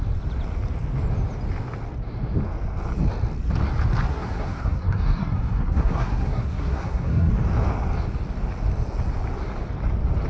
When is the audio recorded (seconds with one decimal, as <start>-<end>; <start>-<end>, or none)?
0.0-4.1; 7.3-10.3